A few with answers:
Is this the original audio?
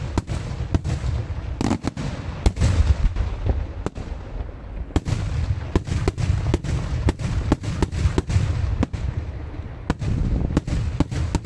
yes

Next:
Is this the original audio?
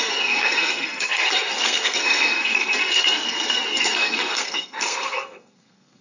no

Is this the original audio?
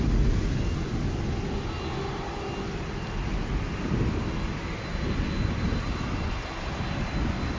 yes